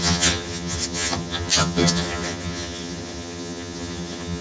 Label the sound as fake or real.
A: fake